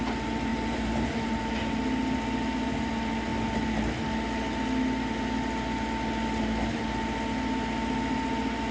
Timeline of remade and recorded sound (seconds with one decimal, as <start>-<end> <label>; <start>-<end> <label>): 0.0-0.5 recorded; 0.5-1.6 remade; 1.6-8.7 recorded